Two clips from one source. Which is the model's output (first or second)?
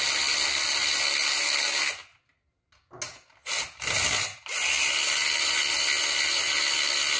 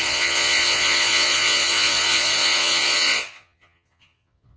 second